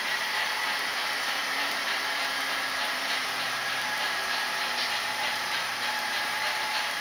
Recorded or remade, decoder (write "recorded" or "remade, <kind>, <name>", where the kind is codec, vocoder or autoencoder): remade, vocoder, BigVGAN v2